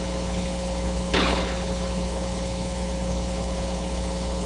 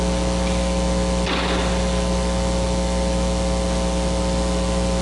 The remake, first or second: first